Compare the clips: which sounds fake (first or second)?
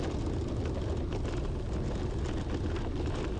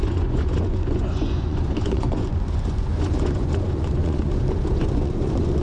second